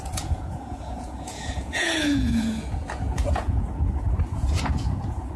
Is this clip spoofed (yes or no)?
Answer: yes